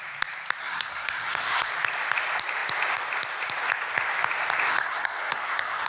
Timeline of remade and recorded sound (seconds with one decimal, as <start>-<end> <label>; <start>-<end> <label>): 0.0-0.6 recorded; 0.6-1.7 remade; 1.7-4.7 recorded; 4.7-5.9 remade